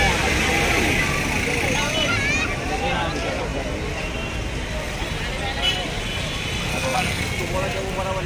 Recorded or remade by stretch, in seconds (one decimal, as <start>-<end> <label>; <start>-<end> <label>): 0.0-6.7 recorded; 6.7-7.2 remade; 7.2-8.3 recorded